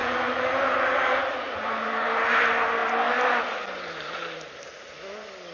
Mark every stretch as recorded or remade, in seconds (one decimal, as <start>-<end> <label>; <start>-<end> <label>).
0.0-1.7 remade; 1.7-5.5 recorded